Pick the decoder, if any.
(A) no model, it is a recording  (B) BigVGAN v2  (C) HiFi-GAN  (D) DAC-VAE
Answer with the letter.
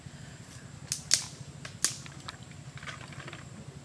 A